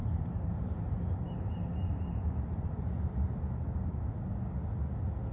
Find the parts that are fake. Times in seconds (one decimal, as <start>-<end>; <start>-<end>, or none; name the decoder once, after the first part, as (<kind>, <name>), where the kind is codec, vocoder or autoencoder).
0.0-3.2 (vocoder, BigVGAN v2)